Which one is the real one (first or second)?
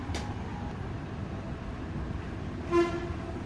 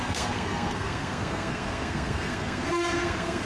first